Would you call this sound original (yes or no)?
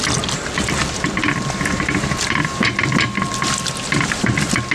yes